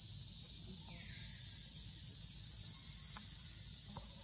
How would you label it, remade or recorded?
recorded